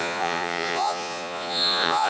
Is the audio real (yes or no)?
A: no